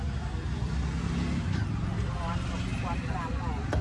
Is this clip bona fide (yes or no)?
yes